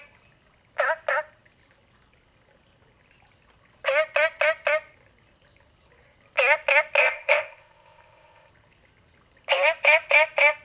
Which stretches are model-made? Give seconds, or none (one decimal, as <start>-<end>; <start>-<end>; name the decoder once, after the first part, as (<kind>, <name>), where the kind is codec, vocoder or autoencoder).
7.0-8.5 (codec, ZipCodec)